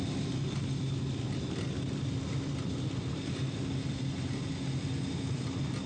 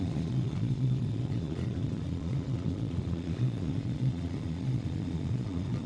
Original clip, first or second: first